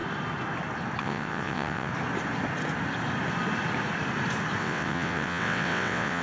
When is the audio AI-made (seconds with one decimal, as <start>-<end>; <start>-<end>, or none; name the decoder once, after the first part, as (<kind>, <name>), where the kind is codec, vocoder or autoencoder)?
1.0-1.9 (vocoder, WaveNeXt); 4.6-6.2